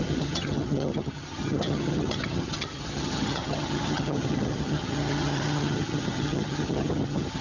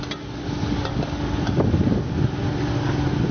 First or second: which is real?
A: second